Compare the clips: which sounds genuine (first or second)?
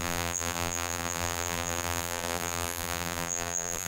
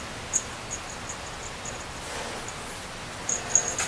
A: second